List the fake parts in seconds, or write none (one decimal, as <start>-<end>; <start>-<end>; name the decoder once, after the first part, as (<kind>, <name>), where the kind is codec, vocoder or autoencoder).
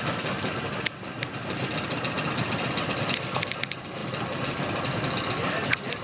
none